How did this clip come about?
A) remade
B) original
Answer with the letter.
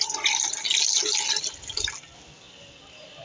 B